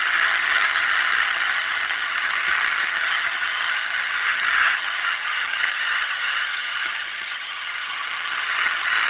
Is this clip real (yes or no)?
no